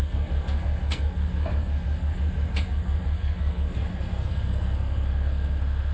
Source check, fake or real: fake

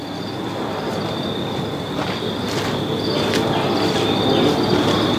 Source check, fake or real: real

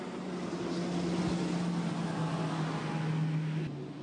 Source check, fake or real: real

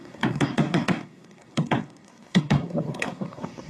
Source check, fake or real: fake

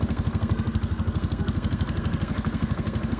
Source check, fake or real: fake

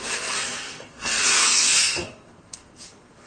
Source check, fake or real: fake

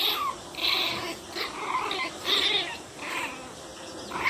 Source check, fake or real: real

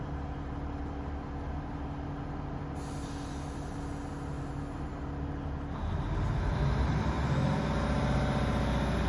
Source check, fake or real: real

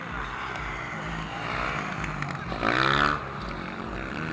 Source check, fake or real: real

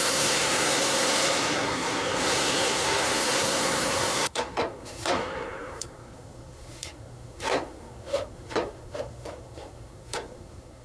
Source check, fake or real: fake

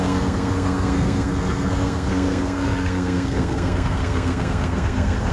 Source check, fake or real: fake